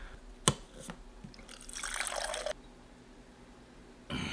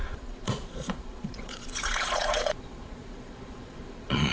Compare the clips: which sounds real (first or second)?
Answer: first